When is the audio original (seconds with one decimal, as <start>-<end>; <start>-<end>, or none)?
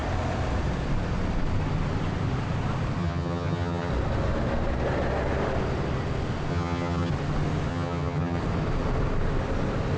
0.0-3.0; 3.9-6.5; 7.1-7.7; 8.4-10.0